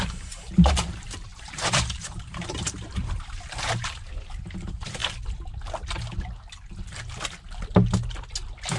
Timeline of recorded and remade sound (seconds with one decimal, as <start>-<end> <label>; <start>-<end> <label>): 0.0-5.0 remade; 5.0-8.8 recorded